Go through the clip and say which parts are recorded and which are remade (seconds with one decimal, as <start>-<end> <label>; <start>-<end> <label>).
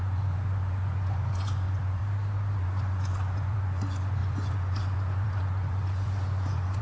0.0-2.0 remade; 2.0-2.6 recorded; 2.6-6.8 remade